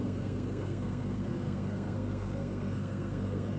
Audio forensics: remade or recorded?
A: remade